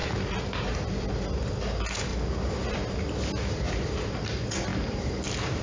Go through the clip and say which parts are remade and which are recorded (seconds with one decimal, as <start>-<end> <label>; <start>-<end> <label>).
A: 0.0-5.6 recorded